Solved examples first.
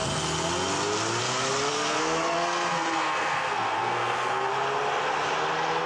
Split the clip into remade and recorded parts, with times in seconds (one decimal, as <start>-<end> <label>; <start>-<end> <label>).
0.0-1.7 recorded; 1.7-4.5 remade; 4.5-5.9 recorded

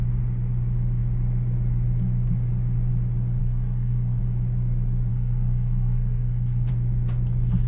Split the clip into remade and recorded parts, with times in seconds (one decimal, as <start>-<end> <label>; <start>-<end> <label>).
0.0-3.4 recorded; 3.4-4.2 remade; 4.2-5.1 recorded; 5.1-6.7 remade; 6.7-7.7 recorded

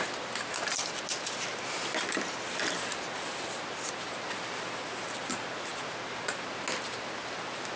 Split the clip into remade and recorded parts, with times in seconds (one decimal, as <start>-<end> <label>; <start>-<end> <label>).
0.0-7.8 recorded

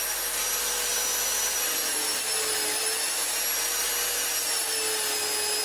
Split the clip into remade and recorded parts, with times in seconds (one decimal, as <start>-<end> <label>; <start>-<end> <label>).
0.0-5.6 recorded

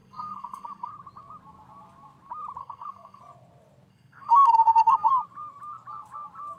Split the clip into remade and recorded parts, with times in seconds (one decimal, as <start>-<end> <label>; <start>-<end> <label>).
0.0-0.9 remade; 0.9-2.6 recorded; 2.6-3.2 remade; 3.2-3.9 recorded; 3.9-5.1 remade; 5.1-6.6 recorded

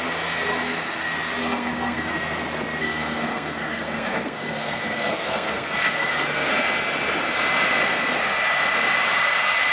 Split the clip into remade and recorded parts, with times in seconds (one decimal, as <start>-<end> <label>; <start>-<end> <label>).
0.0-1.4 recorded; 1.4-2.1 remade; 2.1-2.8 recorded; 2.8-6.5 remade; 6.5-9.7 recorded

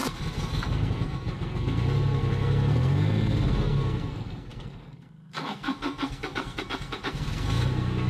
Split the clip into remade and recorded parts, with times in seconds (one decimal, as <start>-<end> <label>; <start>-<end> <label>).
0.0-8.1 remade